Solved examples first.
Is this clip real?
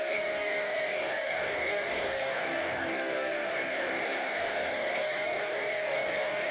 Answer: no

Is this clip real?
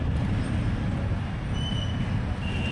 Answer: yes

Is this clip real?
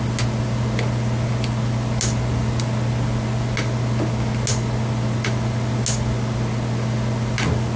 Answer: yes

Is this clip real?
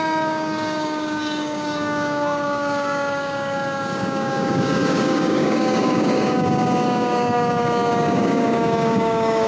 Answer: no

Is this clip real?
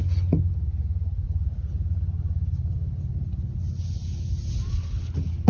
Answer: yes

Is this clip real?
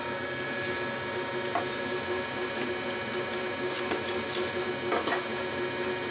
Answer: yes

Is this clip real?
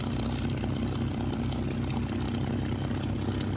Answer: yes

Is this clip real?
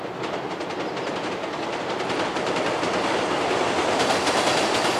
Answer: yes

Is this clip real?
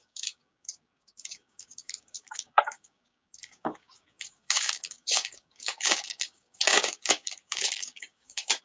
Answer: no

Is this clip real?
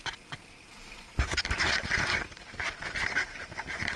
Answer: yes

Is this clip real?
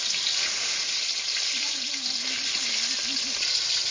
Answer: yes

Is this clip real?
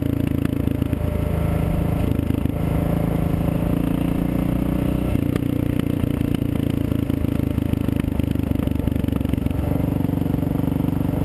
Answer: yes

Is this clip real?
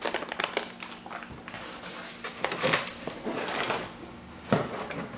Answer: yes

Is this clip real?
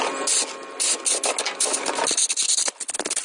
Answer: yes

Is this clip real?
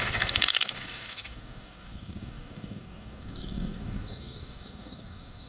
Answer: no